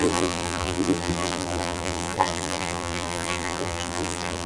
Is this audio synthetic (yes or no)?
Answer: yes